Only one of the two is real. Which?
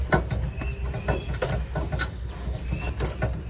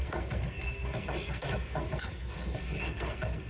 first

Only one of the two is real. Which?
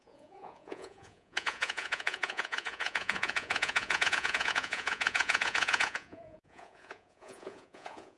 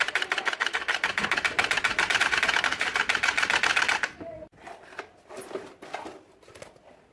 second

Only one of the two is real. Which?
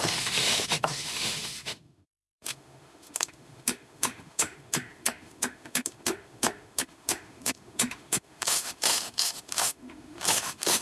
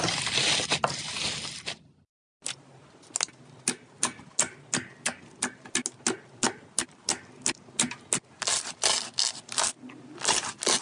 second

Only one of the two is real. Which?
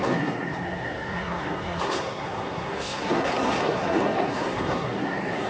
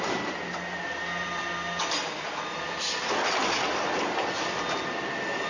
second